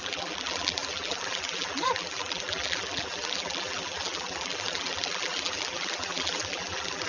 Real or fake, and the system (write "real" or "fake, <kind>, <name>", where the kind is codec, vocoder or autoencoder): fake, vocoder, BigVGAN v2